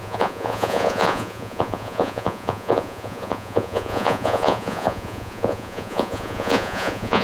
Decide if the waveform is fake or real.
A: fake